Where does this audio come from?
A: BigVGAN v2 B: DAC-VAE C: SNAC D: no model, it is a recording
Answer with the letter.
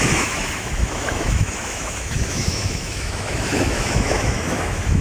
B